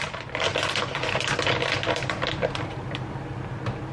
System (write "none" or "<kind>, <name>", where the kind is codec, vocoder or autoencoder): none